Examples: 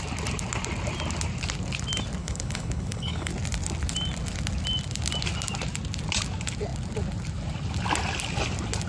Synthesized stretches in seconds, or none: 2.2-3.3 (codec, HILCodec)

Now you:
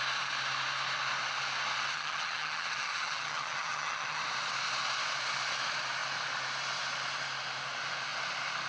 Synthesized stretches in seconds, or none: 1.9-4.2 (vocoder, HiFi-GAN)

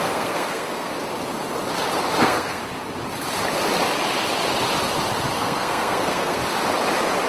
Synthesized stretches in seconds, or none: 0.0-0.9 (codec, SNAC); 2.2-2.6; 5.3-6.4

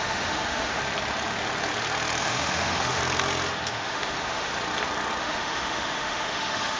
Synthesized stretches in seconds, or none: 0.0-0.8 (autoencoder, DAC-VAE); 2.2-3.0; 3.7-4.5; 5.2-6.8

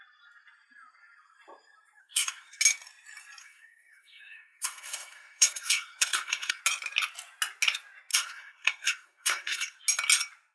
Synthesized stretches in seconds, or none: 2.0-2.6 (codec, SNAC); 3.4-6.6; 8.1-9.8

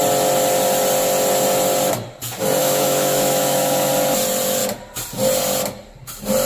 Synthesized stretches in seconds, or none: 2.6-3.9 (autoencoder, DAC-VAE)

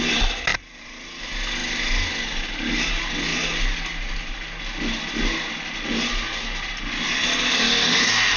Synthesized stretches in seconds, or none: 0.5-1.2 (vocoder, BigVGAN v2)

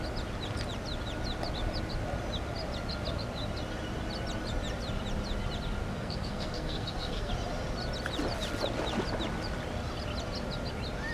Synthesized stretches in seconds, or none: 5.9-7.3 (codec, SNAC)